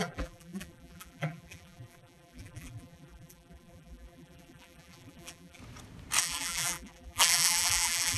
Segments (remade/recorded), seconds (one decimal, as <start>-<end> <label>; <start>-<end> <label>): 0.0-5.6 remade; 5.6-6.2 recorded; 6.2-8.2 remade